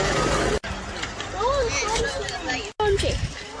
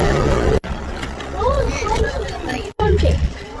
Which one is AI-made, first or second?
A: second